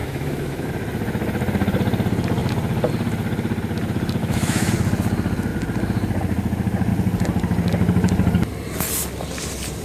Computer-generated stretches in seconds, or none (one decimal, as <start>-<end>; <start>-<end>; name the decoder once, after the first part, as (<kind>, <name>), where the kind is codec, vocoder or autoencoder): 0.0-0.7 (autoencoder, DAC-VAE); 4.2-4.7